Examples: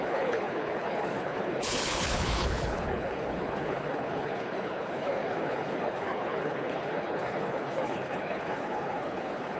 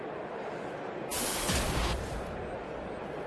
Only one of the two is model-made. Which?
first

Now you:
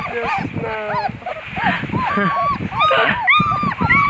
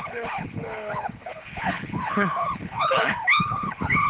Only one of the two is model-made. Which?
second